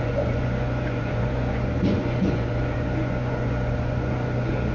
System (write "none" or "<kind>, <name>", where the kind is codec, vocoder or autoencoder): vocoder, Vocos